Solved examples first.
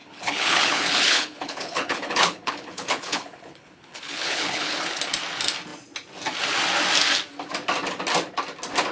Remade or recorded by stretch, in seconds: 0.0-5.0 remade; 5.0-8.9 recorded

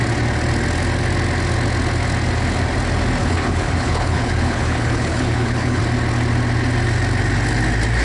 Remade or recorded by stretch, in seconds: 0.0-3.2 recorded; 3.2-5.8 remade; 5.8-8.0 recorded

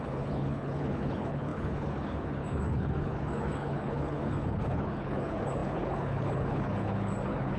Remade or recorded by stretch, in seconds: 0.0-7.6 remade